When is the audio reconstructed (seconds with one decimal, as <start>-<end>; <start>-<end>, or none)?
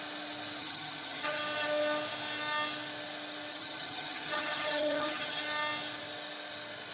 0.6-1.4; 3.5-5.4